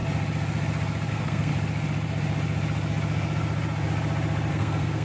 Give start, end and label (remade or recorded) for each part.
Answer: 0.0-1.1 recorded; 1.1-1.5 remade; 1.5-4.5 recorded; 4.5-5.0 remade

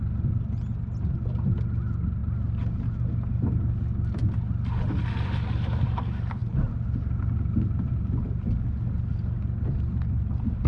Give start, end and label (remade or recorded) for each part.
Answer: 0.0-10.7 recorded

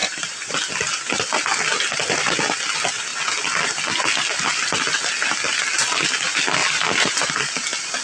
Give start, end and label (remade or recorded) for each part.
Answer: 0.0-0.5 remade; 0.5-6.6 recorded; 6.6-7.3 remade; 7.3-8.0 recorded

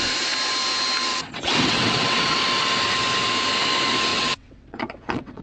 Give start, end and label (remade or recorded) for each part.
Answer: 0.0-1.1 recorded; 1.1-2.4 remade; 2.4-4.1 recorded; 4.1-5.4 remade